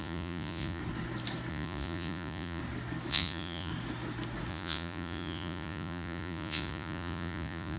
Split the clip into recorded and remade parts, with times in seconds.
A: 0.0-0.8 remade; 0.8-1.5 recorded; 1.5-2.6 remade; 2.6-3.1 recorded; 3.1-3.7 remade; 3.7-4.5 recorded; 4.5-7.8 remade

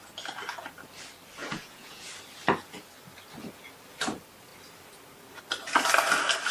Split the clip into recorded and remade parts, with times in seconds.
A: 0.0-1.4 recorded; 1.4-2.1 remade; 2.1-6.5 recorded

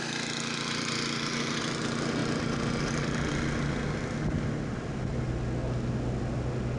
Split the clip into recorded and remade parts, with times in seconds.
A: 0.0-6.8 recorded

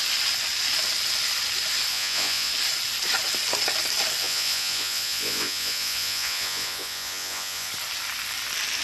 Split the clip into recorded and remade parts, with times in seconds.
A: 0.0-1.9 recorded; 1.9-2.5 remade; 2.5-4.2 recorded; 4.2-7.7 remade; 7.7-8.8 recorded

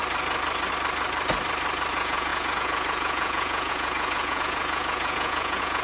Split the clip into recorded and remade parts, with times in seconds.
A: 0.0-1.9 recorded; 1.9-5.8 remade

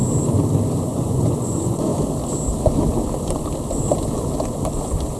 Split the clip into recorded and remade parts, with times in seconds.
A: 0.0-0.8 recorded; 0.8-1.9 remade; 1.9-5.2 recorded

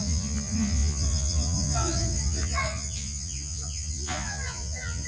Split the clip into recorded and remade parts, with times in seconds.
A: 0.0-5.1 remade

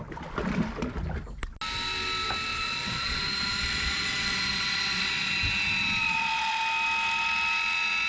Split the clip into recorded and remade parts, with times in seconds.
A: 0.0-2.5 recorded; 2.5-5.3 remade; 5.3-6.0 recorded; 6.0-6.6 remade; 6.6-8.1 recorded